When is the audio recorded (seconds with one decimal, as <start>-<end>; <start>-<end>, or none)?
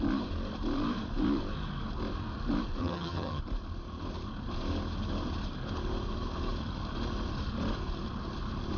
0.0-2.8; 3.4-8.8